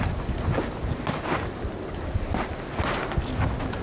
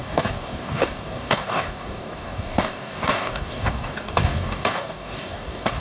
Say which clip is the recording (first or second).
first